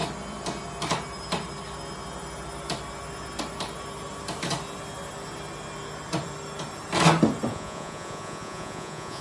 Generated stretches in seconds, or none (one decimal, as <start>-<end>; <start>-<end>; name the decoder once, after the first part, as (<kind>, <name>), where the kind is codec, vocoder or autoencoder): 7.5-9.2 (vocoder, Vocos)

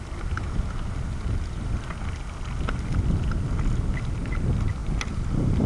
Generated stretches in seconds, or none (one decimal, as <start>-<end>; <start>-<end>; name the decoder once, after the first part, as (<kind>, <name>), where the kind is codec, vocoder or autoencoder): none

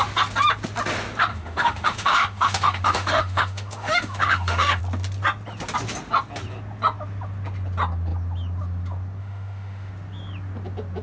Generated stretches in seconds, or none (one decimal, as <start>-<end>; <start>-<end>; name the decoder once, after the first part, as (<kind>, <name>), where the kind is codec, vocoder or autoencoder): 1.3-4.8 (autoencoder, DAC-VAE); 9.2-9.9

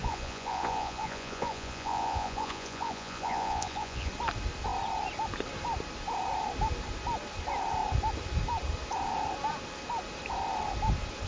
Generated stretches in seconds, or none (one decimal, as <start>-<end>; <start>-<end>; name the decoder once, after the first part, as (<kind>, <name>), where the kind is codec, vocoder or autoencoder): 0.0-4.1 (vocoder, Vocos)